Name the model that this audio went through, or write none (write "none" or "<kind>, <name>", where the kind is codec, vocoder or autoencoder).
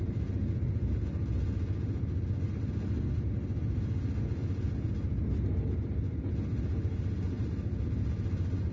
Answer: none